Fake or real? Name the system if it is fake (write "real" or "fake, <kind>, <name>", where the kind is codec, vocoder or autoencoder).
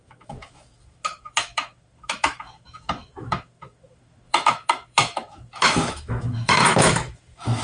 fake, autoencoder, DAC-VAE